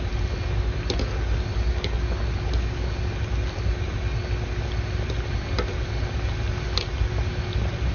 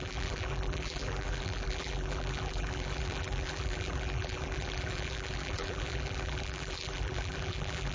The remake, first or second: second